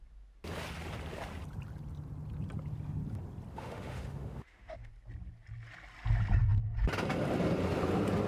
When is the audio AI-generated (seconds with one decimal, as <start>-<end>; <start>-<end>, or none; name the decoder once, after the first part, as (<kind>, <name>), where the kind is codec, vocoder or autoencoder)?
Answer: 3.5-4.9 (autoencoder, DAC-VAE)